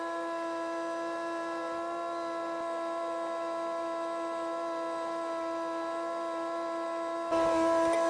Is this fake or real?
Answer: real